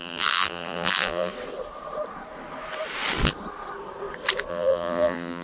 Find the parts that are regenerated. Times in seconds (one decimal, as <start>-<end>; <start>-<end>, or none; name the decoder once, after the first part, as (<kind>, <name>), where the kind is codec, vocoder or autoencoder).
0.0-1.3 (vocoder, BigVGAN v2); 4.5-5.4